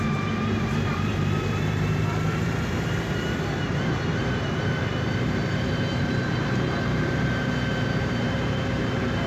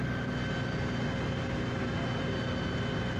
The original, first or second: second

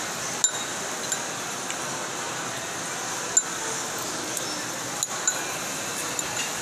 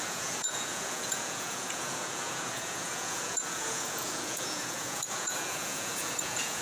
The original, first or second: first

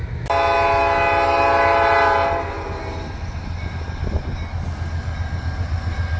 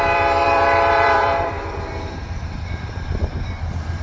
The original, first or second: first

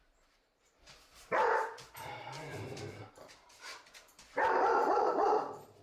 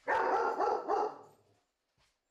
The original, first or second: second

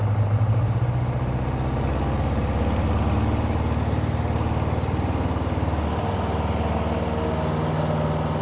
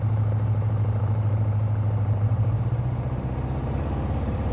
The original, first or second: first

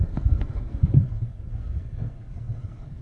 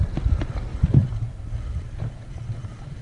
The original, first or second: second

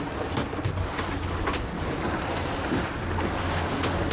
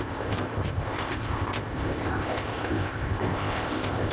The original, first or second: first